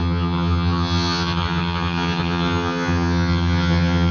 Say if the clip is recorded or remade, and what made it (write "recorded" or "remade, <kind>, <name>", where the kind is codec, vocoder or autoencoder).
remade, vocoder, HiFi-GAN